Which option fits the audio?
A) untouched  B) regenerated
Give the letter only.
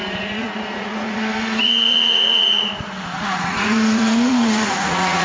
B